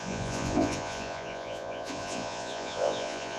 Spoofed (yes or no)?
yes